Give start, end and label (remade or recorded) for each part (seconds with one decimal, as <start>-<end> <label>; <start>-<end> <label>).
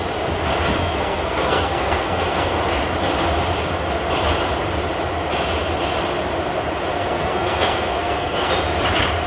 0.0-0.8 recorded; 0.8-2.6 remade; 2.6-6.9 recorded; 6.9-8.5 remade; 8.5-9.3 recorded